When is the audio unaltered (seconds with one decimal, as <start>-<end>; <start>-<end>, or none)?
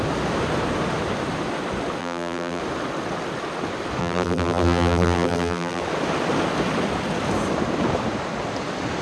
0.0-2.0; 2.6-4.0; 5.8-9.0